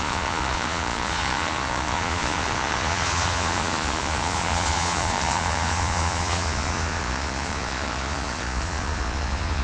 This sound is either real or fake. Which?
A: fake